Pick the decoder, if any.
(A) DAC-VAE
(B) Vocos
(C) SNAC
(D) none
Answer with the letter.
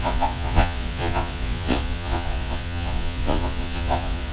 B